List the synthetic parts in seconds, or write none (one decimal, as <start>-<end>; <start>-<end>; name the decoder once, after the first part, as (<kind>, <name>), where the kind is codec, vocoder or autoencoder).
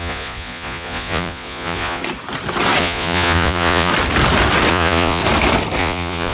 0.0-2.0 (vocoder, Vocos); 2.8-3.9; 4.7-5.2; 5.8-6.3